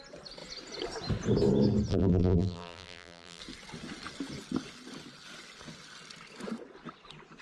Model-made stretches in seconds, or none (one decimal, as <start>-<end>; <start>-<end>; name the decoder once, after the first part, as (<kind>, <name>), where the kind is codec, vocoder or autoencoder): 1.9-3.4 (vocoder, BigVGAN v2)